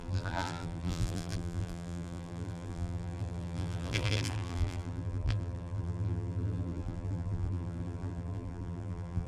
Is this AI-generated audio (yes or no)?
yes